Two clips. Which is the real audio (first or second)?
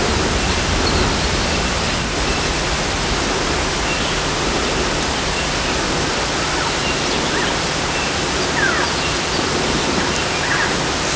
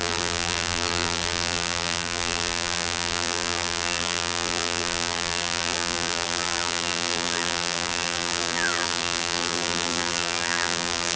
first